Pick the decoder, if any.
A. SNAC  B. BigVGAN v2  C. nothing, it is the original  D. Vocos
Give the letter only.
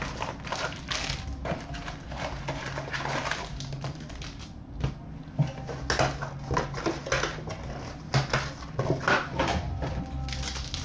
C